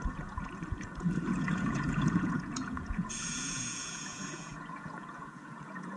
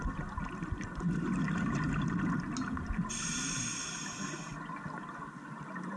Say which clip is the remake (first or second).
first